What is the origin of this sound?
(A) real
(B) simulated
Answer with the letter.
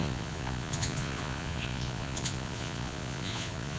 B